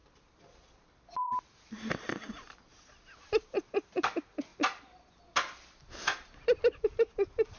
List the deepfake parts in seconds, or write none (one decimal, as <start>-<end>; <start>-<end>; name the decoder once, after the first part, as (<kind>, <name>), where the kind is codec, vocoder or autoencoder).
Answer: 0.0-4.5 (vocoder, BigVGAN v2)